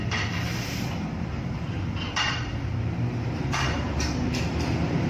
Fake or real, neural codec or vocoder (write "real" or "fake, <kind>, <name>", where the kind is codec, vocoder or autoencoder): fake, vocoder, BigVGAN v2